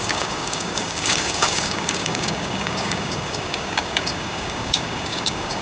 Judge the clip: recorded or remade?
remade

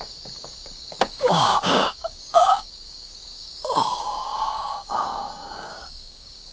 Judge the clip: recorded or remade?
remade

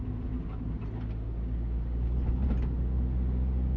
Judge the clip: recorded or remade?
recorded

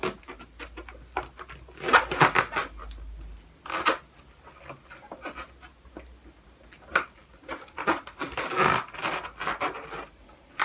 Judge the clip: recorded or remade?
recorded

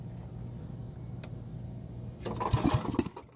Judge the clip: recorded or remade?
recorded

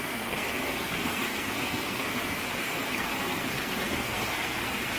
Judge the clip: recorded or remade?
remade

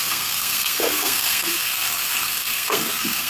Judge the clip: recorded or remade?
remade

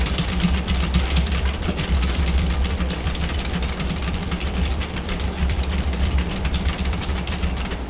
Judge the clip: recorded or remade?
remade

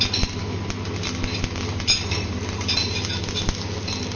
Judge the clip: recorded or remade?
recorded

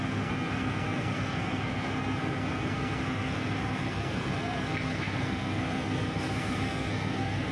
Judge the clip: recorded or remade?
remade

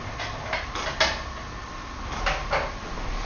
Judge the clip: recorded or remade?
recorded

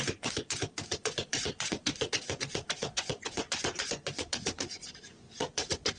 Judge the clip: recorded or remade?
remade